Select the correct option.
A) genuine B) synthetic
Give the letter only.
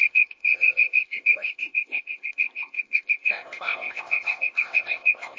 B